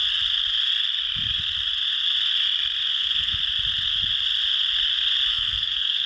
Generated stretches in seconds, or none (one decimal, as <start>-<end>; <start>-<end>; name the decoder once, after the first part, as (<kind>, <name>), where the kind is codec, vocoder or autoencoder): 2.9-3.4 (codec, SNAC); 5.3-6.1